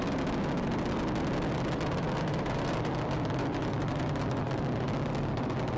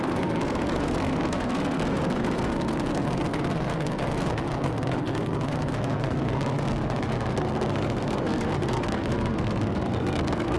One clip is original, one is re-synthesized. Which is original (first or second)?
first